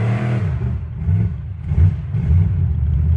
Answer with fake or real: fake